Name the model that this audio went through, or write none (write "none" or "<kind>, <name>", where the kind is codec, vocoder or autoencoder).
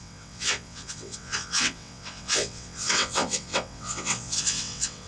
vocoder, WaveNeXt